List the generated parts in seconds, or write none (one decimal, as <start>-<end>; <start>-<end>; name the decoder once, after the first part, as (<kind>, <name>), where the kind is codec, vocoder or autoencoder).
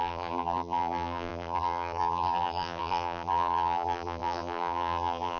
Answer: 0.0-5.4 (vocoder, BigVGAN v2)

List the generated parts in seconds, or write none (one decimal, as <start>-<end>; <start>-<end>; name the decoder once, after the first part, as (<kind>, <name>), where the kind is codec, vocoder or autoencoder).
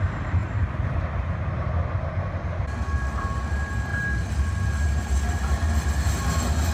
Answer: 0.0-0.4 (vocoder, BigVGAN v2); 2.6-3.9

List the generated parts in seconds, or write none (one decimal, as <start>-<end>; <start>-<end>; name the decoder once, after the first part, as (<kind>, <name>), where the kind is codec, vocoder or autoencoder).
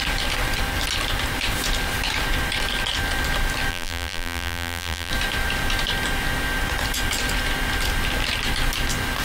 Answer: 3.7-5.1 (vocoder, BigVGAN v2)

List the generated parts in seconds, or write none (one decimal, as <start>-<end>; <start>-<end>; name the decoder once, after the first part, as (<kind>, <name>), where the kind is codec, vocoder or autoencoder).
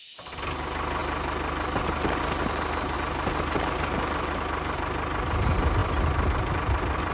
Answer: none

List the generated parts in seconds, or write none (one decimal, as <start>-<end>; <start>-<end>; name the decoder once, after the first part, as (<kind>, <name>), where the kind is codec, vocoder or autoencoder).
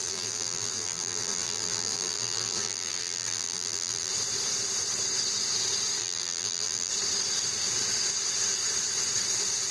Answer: 0.0-4.1 (vocoder, BigVGAN v2); 6.0-6.9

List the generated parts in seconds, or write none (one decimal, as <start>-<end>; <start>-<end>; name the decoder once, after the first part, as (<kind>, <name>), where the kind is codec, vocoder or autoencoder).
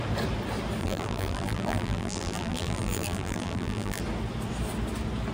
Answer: 0.8-4.0 (vocoder, BigVGAN v2)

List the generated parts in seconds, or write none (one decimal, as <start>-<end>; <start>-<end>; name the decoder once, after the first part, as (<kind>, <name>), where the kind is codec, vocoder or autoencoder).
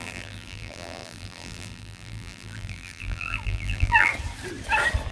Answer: 0.0-4.1 (vocoder, BigVGAN v2)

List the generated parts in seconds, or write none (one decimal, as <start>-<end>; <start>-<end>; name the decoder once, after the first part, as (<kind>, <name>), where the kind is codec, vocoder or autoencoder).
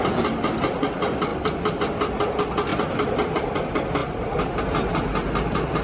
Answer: 1.3-1.8 (vocoder, BigVGAN v2); 2.7-3.3; 4.0-4.6